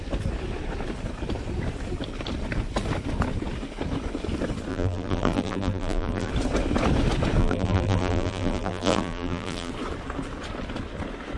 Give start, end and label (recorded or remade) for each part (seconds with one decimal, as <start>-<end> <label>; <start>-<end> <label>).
0.0-4.7 recorded; 4.7-6.3 remade; 6.3-7.4 recorded; 7.4-9.7 remade; 9.7-11.4 recorded